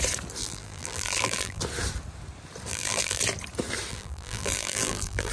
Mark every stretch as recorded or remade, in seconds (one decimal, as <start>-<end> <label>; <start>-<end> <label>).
0.0-0.4 recorded; 0.4-1.6 remade; 1.6-2.7 recorded; 2.7-3.2 remade; 3.2-3.9 recorded; 3.9-5.3 remade